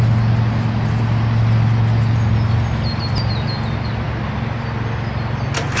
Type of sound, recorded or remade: recorded